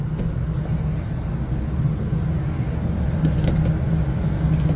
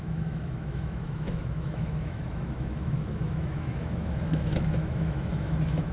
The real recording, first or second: first